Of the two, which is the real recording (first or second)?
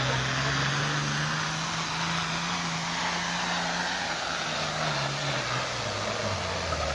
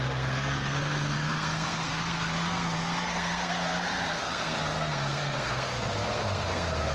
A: first